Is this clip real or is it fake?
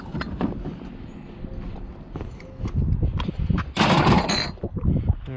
real